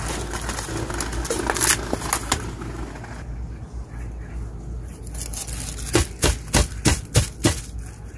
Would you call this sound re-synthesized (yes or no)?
no